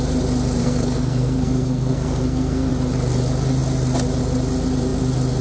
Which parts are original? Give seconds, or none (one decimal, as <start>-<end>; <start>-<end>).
0.0-0.6; 2.7-5.4